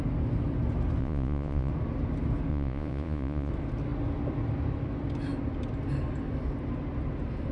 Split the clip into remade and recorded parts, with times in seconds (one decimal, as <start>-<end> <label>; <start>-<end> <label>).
0.0-1.0 recorded; 1.0-1.7 remade; 1.7-2.5 recorded; 2.5-3.5 remade; 3.5-7.5 recorded